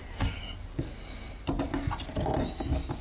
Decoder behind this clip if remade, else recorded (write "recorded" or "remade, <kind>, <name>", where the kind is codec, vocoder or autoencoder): recorded